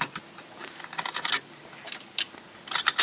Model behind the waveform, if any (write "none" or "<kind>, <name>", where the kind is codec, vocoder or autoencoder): none